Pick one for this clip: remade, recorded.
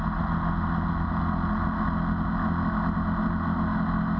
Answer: recorded